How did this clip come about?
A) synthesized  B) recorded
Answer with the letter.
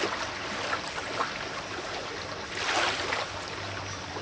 B